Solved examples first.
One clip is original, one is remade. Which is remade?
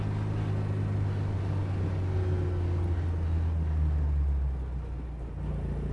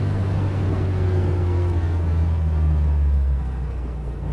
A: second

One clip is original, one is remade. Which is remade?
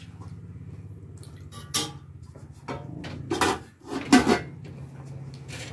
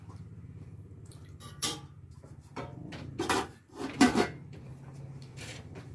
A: second